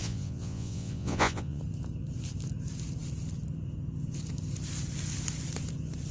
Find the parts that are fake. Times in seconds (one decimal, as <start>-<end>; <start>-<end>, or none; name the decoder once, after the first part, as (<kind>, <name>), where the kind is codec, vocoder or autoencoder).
0.0-1.6 (vocoder, Vocos)